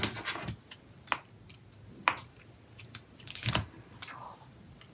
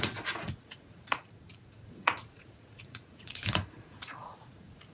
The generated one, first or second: second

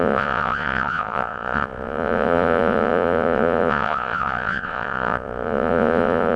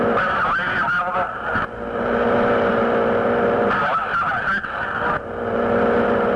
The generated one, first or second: first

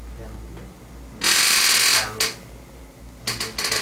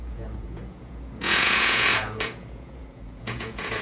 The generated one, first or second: second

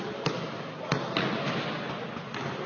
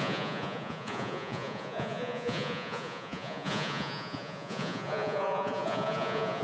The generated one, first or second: second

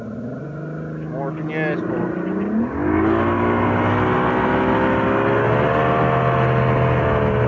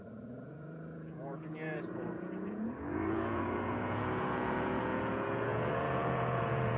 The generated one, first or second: second